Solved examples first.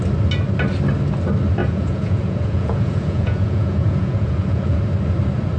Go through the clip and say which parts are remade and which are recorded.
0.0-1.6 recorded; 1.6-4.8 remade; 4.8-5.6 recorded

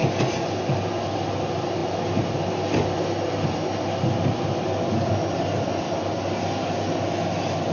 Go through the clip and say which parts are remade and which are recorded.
0.0-7.7 recorded

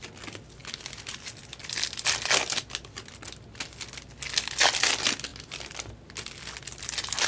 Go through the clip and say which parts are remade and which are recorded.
0.0-7.3 recorded